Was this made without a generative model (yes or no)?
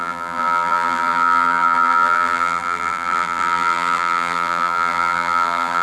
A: no